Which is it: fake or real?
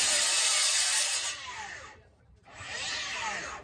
fake